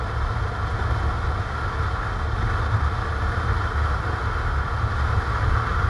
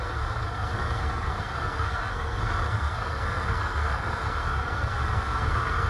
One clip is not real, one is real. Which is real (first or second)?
first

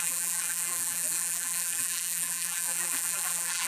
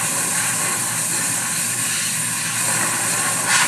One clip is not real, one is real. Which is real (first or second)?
second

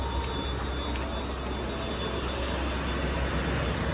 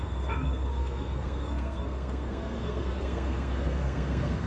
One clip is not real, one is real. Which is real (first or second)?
first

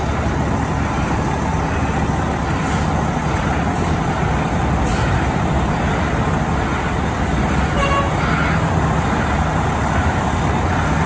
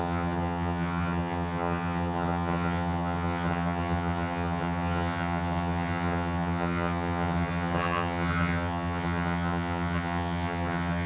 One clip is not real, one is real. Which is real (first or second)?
first